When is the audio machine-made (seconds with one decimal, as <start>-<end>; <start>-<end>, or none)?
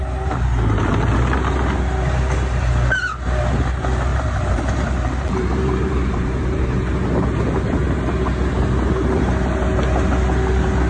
4.1-6.6